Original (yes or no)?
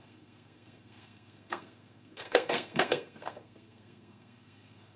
no